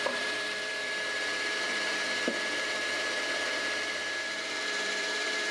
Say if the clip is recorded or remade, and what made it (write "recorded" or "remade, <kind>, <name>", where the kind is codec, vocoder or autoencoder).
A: remade, vocoder, BigVGAN v2